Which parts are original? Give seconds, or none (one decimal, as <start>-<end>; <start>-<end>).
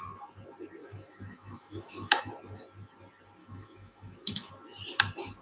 0.0-0.8; 2.3-3.4; 4.5-5.4